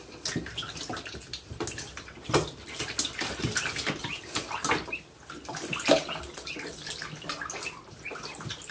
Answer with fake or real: real